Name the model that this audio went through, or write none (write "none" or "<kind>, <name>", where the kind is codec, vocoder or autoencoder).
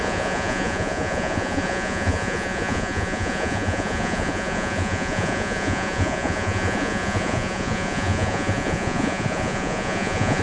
vocoder, Vocos